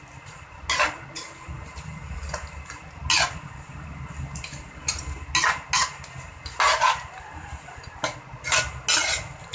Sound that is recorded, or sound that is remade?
recorded